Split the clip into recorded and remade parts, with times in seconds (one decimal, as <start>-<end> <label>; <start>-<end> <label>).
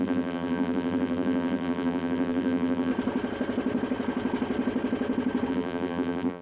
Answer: 0.0-2.9 remade; 2.9-5.5 recorded; 5.5-6.4 remade